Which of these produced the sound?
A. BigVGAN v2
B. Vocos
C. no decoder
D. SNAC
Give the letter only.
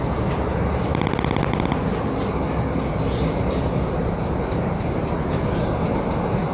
C